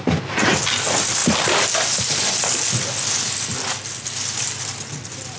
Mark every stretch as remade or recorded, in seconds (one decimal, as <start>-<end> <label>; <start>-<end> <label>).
0.0-5.4 recorded